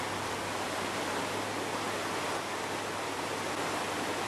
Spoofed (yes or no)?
no